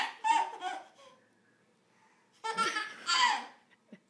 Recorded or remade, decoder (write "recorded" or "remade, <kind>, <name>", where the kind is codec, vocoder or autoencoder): recorded